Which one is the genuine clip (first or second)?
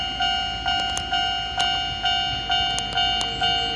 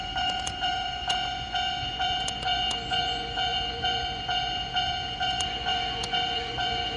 first